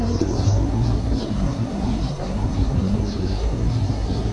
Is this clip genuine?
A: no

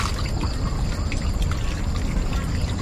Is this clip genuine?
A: yes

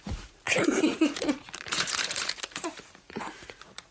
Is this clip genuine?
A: no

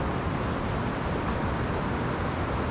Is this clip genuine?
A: yes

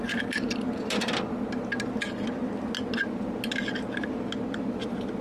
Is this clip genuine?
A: yes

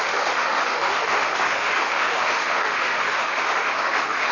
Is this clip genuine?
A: no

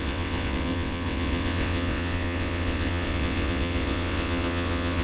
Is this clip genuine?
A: no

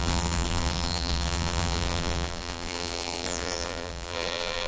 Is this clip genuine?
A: no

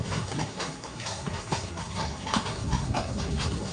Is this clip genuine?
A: no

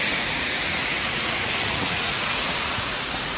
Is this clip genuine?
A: no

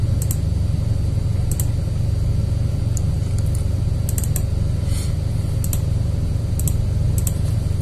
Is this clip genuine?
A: yes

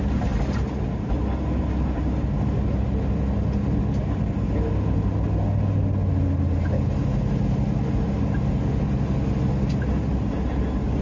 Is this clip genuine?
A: yes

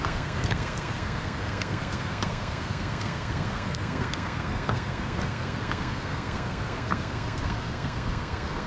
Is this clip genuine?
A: no